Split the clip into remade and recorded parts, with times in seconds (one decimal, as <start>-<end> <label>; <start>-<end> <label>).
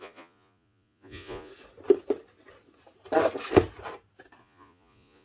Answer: 0.0-1.5 remade; 1.5-4.4 recorded; 4.4-5.2 remade